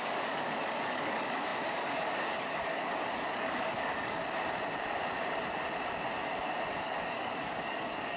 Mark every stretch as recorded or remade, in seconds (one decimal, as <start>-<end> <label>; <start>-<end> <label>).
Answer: 0.0-4.2 remade; 4.2-6.7 recorded; 6.7-8.2 remade

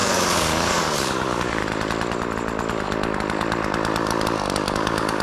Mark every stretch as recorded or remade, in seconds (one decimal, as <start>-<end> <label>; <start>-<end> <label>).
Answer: 0.0-1.6 remade; 1.6-4.7 recorded; 4.7-5.2 remade

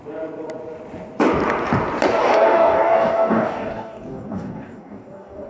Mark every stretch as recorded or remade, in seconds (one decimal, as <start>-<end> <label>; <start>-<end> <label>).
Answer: 0.0-2.2 recorded; 2.2-5.5 remade

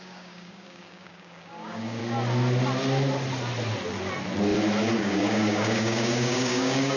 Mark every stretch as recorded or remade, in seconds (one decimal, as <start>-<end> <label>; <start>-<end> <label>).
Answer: 0.0-2.0 remade; 2.0-5.0 recorded; 5.0-7.0 remade

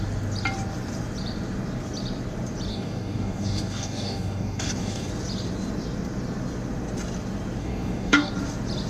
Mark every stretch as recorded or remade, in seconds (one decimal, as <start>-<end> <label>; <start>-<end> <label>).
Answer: 0.0-2.7 recorded; 2.7-5.1 remade; 5.1-7.6 recorded; 7.6-8.3 remade; 8.3-8.9 recorded